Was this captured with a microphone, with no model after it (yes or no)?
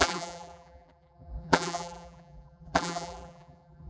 no